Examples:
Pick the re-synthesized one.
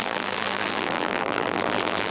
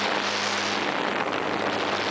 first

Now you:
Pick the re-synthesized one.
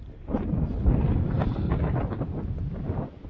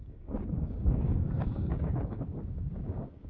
second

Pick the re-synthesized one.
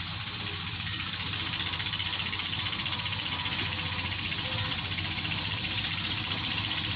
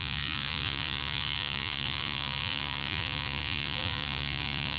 second